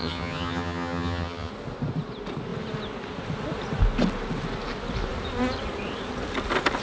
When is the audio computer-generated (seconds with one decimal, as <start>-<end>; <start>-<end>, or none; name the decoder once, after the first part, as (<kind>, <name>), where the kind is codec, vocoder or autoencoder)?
0.0-1.5 (vocoder, HiFi-GAN)